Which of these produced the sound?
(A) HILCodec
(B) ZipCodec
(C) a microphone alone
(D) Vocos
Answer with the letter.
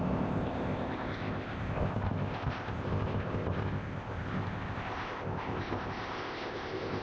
B